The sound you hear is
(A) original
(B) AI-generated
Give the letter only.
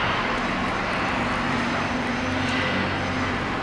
A